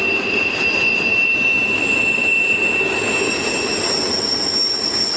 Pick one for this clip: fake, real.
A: real